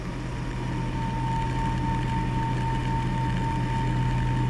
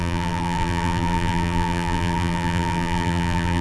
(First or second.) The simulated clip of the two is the second